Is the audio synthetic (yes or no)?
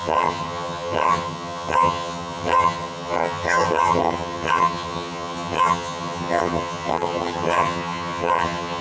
yes